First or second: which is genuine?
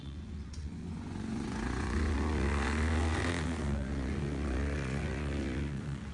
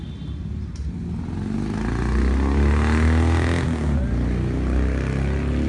second